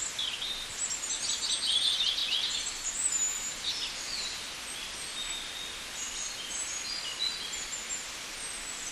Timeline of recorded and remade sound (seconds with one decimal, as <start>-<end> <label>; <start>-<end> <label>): 0.0-8.9 recorded